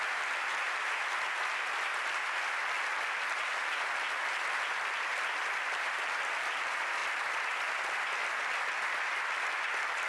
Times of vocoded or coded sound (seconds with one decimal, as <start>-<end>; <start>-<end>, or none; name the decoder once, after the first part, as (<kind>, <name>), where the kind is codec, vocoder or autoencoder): none